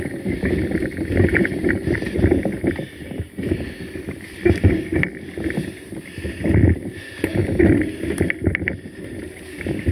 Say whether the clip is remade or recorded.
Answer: recorded